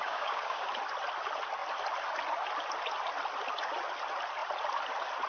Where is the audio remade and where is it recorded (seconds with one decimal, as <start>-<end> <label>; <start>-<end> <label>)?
0.0-0.7 remade; 0.7-5.3 recorded